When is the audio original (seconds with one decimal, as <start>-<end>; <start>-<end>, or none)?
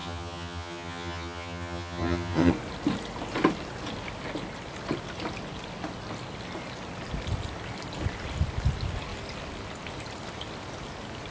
2.5-11.3